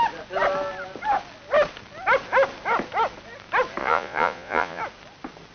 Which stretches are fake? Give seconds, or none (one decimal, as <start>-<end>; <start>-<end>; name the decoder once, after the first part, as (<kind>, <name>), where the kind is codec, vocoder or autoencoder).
3.8-4.8 (vocoder, Vocos)